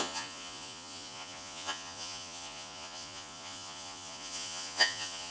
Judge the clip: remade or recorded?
remade